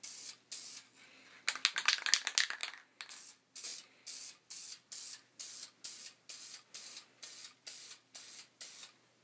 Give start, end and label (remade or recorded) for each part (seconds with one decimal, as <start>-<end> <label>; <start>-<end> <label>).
0.0-9.2 recorded

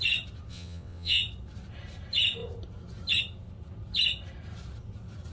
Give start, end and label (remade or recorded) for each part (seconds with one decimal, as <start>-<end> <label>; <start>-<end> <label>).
0.0-0.5 recorded; 0.5-1.2 remade; 1.2-5.3 recorded

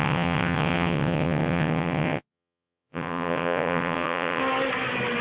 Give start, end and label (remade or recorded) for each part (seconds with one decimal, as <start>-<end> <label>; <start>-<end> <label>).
0.0-4.4 remade; 4.4-5.2 recorded

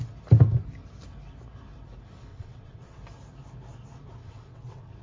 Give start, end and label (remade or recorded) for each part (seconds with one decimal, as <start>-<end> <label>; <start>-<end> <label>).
0.0-2.3 recorded; 2.3-3.0 remade; 3.0-4.2 recorded; 4.2-5.0 remade

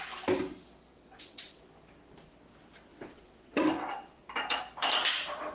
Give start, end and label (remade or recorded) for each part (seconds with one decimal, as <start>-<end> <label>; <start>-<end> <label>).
0.0-0.9 recorded; 0.9-1.7 remade; 1.7-2.9 recorded; 2.9-4.2 remade; 4.2-5.5 recorded

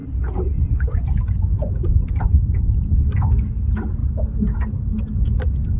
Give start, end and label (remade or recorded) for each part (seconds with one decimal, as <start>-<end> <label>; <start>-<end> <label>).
0.0-5.8 recorded